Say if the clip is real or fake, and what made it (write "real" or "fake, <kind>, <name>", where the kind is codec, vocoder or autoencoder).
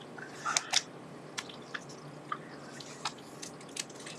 real